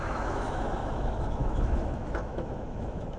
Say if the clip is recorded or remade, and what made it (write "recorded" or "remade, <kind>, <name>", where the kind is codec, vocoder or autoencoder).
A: remade, autoencoder, DAC-VAE